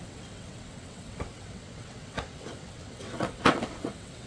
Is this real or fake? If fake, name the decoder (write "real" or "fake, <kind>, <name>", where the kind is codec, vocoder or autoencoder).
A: fake, vocoder, WaveNeXt